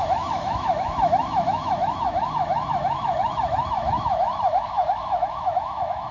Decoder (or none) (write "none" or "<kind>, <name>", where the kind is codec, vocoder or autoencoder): autoencoder, DAC-VAE